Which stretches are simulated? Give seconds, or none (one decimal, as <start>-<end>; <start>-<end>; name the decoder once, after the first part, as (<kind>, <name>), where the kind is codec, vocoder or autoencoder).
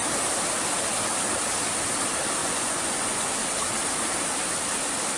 2.4-3.3 (vocoder, Vocos)